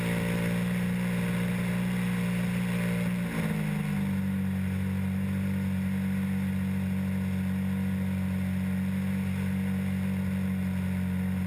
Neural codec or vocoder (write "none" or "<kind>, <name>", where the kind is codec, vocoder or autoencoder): none